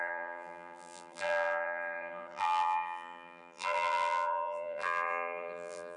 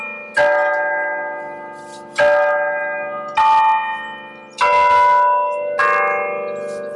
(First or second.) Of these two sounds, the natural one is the second